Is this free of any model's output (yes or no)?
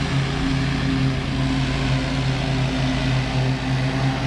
yes